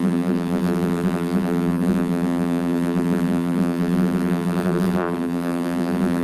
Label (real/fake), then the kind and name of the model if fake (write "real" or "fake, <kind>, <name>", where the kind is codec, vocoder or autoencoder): fake, vocoder, BigVGAN v2